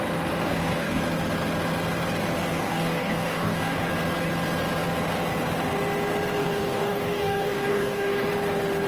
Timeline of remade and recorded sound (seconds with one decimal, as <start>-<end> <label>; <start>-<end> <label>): 0.0-0.4 recorded; 0.4-1.0 remade; 1.0-2.5 recorded; 2.5-3.9 remade; 3.9-6.4 recorded; 6.4-8.3 remade; 8.3-8.9 recorded